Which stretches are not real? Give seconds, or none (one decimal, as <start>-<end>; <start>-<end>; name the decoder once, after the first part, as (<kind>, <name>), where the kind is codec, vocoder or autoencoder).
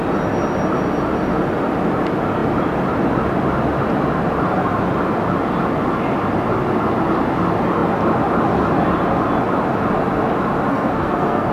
10.7-11.5 (codec, SNAC)